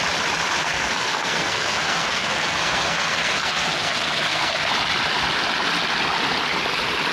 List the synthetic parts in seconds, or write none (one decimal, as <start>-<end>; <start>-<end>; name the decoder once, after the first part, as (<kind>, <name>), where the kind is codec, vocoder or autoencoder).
0.6-4.7 (codec, SNAC)